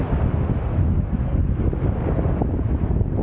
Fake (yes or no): no